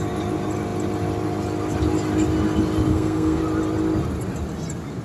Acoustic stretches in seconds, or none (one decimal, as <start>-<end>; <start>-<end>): 0.0-2.9; 3.4-5.0